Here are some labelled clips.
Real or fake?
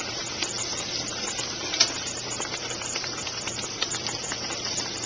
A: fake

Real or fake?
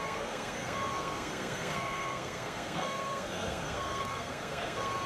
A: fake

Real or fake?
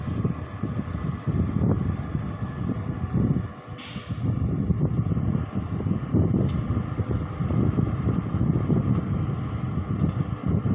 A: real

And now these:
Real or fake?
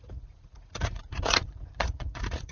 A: fake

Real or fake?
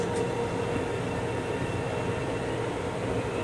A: real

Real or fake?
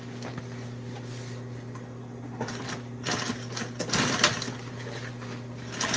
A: real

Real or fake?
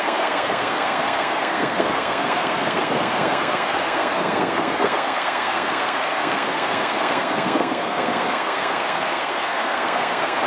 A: fake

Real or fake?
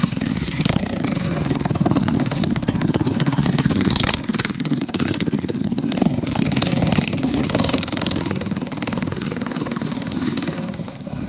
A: fake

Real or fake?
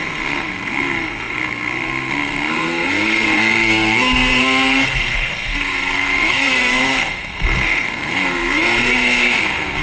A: fake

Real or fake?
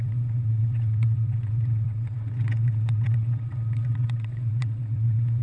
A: fake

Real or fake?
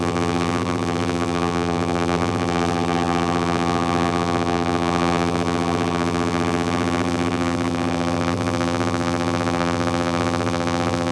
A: fake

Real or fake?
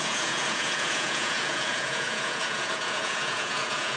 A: fake